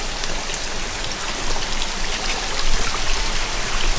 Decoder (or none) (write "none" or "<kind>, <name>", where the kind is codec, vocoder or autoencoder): none